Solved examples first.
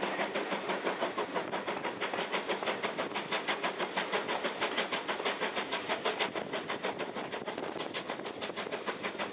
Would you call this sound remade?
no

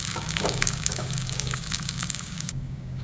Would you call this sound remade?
yes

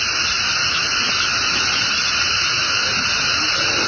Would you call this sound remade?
no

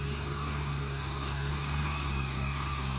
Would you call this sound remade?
yes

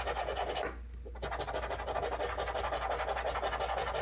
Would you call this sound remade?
no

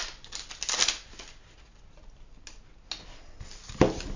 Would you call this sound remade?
no